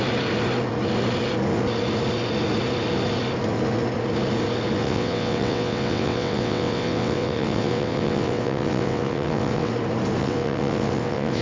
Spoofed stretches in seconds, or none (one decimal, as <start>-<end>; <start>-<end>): 4.8-9.7; 10.2-11.4